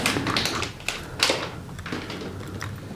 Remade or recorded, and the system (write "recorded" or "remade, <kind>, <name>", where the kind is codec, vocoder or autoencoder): recorded